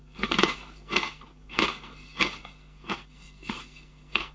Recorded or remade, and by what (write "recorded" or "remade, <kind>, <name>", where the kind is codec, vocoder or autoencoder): remade, codec, SNAC